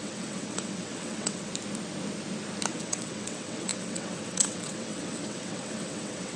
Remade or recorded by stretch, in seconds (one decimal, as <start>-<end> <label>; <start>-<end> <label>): 0.0-1.5 remade; 1.5-2.7 recorded; 2.7-6.4 remade